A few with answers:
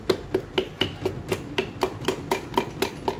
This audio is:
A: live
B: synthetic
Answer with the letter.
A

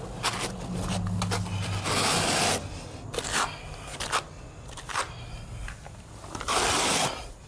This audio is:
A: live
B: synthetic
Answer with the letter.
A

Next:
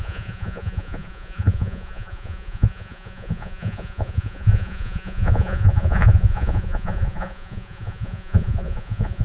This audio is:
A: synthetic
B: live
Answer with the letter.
A